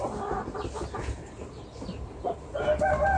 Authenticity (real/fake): real